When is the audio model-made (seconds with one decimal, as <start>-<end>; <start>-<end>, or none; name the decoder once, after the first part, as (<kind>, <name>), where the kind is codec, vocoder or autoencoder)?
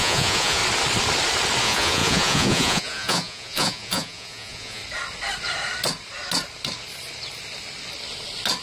0.0-0.6 (vocoder, Vocos); 1.6-4.8